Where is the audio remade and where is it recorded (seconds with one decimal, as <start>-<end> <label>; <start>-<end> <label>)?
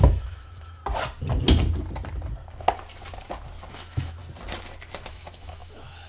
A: 0.0-0.8 remade; 0.8-3.7 recorded; 3.7-4.2 remade; 4.2-5.1 recorded; 5.1-6.1 remade